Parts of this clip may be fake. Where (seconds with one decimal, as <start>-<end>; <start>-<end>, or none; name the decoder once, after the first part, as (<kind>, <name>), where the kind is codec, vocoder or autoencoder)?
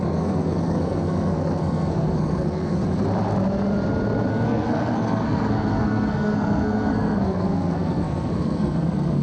0.0-2.8 (codec, SNAC); 4.3-9.2